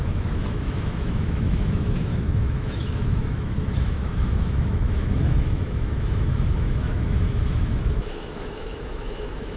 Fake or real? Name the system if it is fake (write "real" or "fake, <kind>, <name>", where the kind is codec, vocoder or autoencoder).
fake, autoencoder, DAC-VAE